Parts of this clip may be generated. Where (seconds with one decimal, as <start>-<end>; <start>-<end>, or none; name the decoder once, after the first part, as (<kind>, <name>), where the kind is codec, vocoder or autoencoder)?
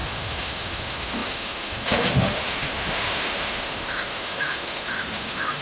0.0-5.6 (autoencoder, DAC-VAE)